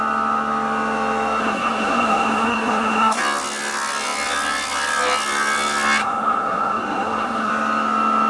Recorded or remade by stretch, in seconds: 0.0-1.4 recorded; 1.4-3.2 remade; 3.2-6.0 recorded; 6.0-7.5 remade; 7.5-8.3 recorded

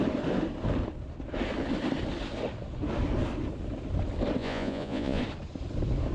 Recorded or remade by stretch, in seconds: 0.0-4.4 recorded; 4.4-5.2 remade; 5.2-6.1 recorded